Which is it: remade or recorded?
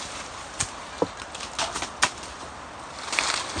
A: recorded